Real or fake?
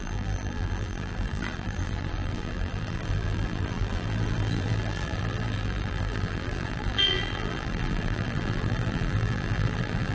fake